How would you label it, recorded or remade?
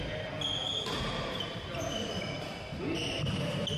recorded